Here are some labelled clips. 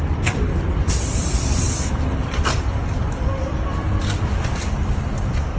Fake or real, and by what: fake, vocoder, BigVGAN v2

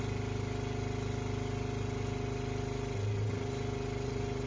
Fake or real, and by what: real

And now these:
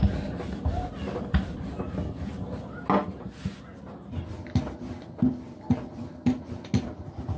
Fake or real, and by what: real